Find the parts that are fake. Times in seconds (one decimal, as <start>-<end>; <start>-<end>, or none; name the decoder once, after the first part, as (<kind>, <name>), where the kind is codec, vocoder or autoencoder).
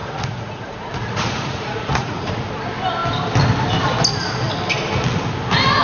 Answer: 0.0-2.5 (vocoder, Vocos)